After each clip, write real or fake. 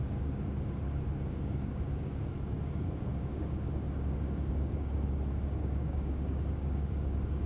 fake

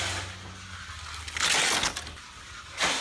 real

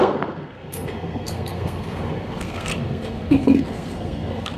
fake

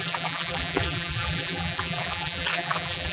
fake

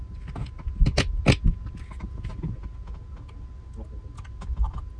real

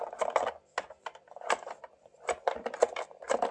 real